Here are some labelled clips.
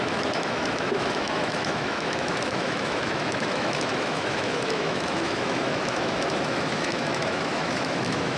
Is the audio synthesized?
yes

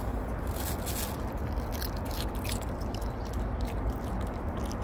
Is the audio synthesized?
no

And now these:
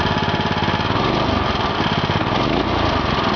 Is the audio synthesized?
no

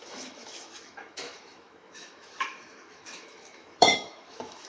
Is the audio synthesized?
yes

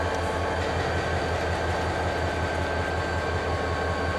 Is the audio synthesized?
no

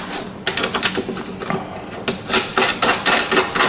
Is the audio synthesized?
no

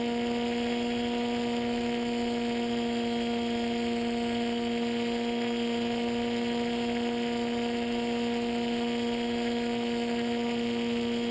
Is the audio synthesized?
no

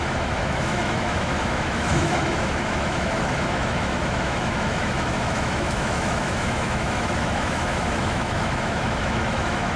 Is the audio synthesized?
yes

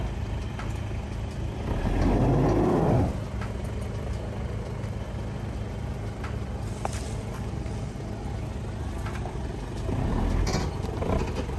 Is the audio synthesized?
no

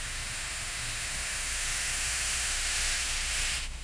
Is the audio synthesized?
yes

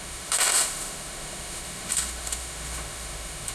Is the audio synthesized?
yes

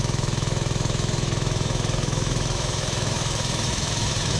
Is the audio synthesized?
yes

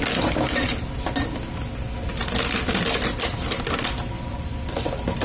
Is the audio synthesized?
no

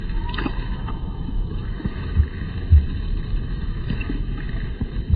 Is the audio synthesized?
yes